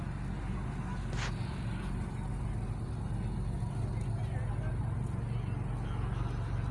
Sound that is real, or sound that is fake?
real